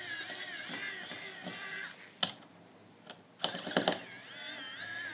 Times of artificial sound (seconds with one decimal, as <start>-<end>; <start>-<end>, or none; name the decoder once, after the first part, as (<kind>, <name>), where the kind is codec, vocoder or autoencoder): none